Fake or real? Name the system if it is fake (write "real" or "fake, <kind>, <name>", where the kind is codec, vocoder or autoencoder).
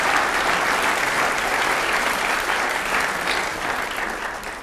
real